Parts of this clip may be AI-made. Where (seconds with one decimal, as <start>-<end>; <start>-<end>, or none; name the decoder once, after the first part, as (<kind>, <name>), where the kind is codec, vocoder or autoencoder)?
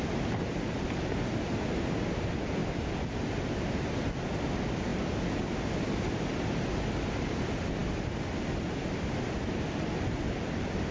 none